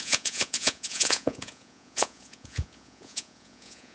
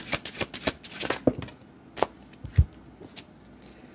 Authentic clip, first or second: second